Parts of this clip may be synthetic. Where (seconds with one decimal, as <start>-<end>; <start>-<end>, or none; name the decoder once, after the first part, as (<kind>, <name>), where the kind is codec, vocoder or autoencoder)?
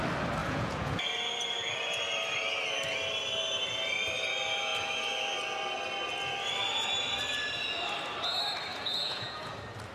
0.4-1.0 (vocoder, Vocos); 8.7-9.5